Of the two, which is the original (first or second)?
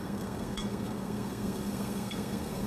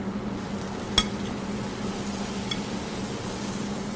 second